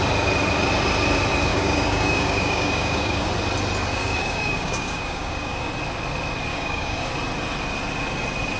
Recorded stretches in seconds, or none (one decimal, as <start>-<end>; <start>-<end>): 0.0-1.5; 3.3-3.9; 5.7-6.5; 7.1-8.6